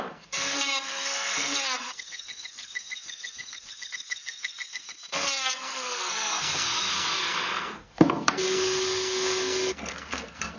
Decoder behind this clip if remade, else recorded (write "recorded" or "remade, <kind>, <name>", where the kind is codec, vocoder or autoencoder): remade, codec, SNAC